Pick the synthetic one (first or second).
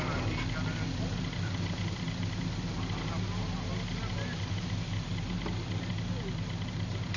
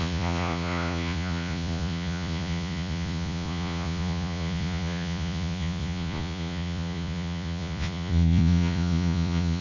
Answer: second